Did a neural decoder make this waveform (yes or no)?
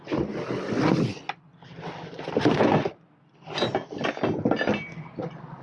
no